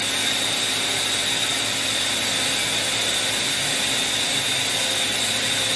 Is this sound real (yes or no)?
yes